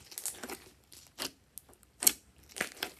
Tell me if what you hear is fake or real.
real